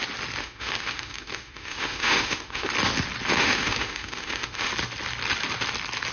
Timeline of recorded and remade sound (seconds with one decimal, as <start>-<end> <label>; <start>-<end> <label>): 0.0-0.4 recorded; 0.4-2.7 remade; 2.7-3.4 recorded; 3.4-4.7 remade; 4.7-6.1 recorded